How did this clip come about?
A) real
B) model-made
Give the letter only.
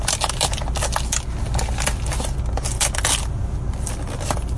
A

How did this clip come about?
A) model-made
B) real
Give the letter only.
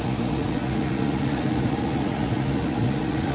A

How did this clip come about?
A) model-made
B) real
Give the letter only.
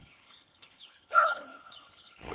A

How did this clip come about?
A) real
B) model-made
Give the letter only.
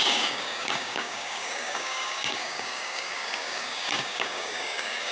B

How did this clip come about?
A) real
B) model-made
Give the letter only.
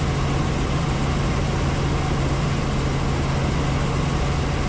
A